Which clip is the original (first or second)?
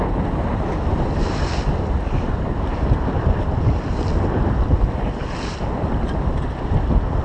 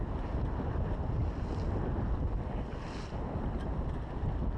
second